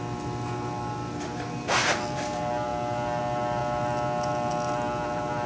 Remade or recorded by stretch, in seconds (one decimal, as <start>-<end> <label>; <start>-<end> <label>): 0.0-5.5 recorded